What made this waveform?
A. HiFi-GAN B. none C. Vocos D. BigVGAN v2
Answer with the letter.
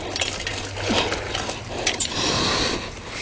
B